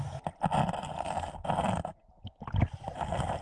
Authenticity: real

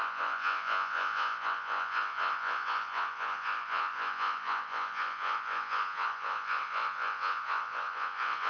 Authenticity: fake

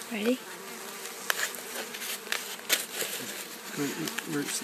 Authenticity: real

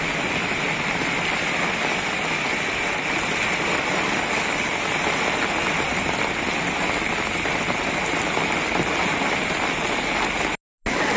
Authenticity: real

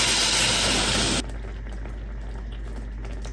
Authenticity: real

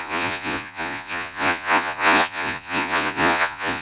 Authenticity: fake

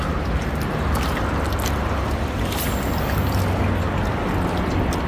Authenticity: real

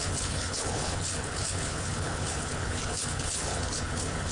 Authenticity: fake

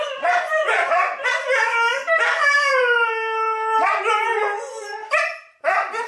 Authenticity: fake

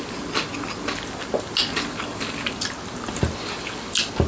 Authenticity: real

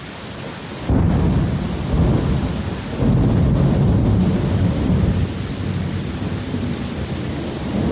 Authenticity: real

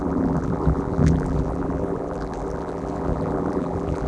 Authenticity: fake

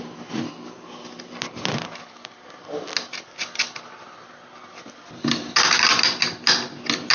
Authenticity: real